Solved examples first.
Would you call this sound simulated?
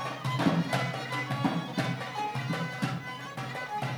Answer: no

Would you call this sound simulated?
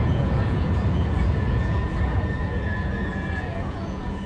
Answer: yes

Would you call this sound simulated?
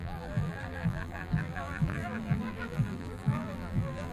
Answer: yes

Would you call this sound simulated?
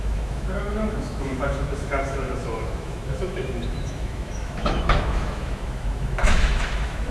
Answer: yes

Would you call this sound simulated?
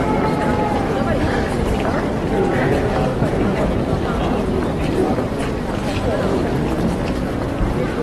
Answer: no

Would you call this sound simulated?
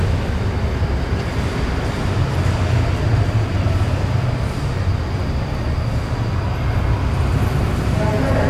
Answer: no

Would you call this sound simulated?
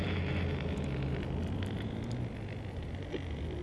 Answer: no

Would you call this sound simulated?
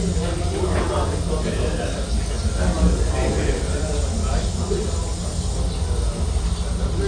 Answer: no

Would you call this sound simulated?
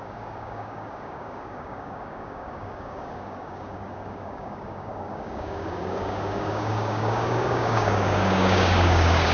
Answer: yes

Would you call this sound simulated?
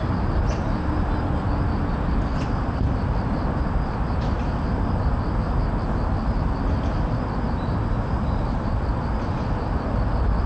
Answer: no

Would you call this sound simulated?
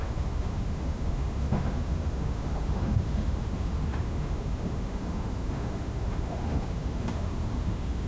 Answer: yes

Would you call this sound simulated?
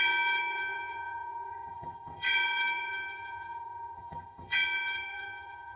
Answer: yes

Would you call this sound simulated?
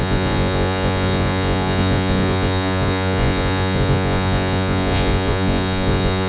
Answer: yes